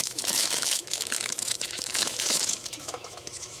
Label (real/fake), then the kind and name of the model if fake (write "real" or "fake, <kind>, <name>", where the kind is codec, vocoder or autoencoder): fake, autoencoder, DAC-VAE